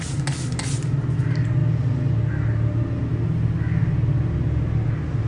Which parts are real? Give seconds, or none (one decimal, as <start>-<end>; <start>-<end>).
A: 0.0-5.3